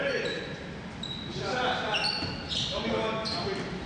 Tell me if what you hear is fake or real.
real